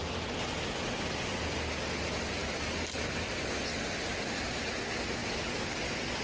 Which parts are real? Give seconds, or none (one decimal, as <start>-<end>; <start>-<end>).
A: 0.0-5.2; 5.8-6.2